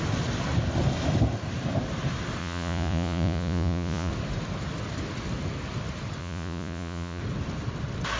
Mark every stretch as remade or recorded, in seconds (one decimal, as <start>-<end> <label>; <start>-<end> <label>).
0.0-2.4 recorded; 2.4-4.1 remade; 4.1-6.2 recorded; 6.2-7.2 remade; 7.2-8.2 recorded